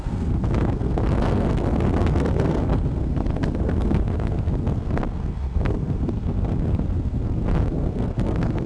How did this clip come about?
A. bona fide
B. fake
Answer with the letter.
B